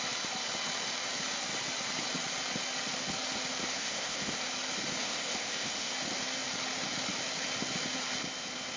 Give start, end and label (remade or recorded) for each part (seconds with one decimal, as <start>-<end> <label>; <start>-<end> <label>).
0.0-3.7 recorded; 3.7-4.4 remade; 4.4-5.0 recorded; 5.0-5.9 remade; 5.9-8.8 recorded